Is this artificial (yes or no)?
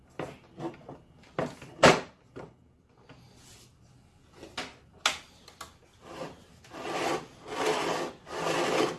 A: no